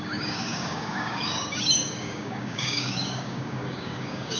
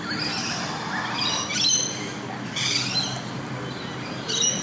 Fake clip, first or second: first